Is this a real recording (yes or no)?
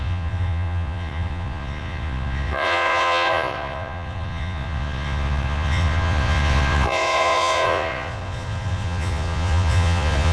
no